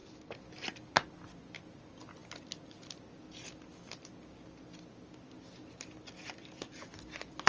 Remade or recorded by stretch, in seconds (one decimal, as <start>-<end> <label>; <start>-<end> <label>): 0.0-7.5 recorded